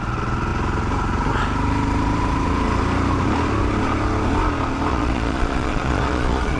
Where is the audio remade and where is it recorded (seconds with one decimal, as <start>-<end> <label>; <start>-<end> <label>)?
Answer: 0.0-4.9 recorded; 4.9-6.6 remade